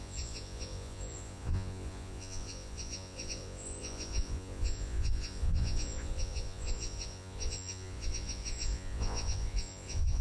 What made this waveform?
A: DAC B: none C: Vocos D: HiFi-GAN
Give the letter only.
C